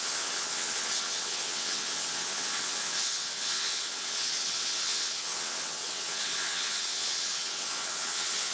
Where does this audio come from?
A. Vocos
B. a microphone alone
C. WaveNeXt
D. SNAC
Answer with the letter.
C